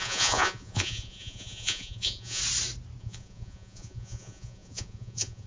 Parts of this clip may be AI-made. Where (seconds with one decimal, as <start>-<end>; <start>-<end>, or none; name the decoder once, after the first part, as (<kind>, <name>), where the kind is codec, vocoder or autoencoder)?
0.0-2.4 (vocoder, Vocos); 3.0-5.5